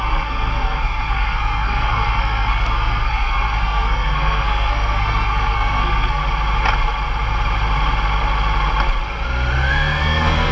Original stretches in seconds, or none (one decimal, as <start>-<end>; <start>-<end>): 6.2-9.7